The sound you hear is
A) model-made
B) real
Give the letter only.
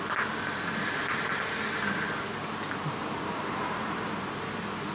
B